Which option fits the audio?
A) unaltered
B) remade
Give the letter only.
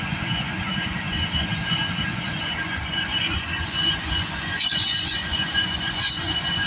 B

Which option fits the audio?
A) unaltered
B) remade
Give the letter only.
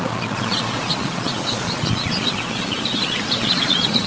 B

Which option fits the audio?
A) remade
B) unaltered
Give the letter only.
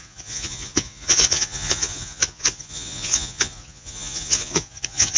A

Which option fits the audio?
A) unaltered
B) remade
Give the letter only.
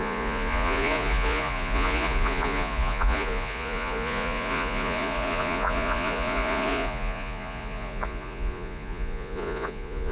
B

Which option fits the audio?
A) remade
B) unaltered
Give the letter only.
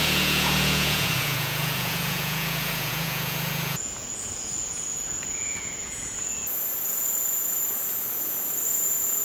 A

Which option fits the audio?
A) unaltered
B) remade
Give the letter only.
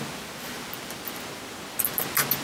A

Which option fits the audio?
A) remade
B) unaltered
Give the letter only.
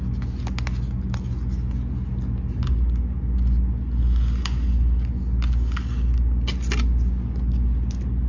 B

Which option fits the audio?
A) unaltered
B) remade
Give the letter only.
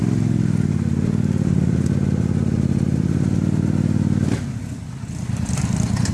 A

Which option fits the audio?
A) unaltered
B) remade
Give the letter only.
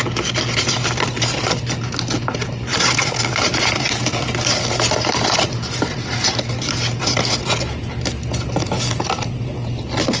A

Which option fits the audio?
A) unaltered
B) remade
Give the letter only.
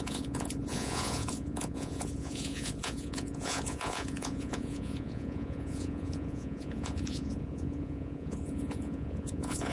B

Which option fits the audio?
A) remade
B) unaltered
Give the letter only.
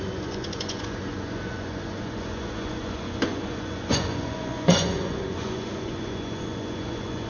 A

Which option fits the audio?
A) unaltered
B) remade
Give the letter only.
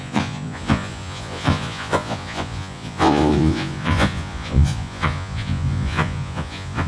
B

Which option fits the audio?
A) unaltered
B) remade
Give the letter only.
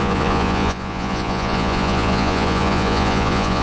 B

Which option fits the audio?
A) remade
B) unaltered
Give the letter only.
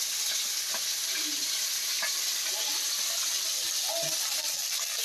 B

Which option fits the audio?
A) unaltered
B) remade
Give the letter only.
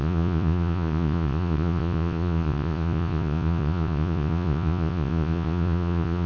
B